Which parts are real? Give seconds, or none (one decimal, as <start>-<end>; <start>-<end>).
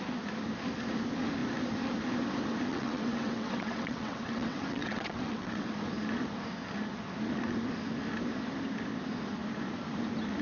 0.0-2.7; 5.7-10.4